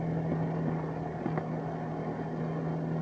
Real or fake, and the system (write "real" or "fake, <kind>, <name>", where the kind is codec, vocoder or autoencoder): real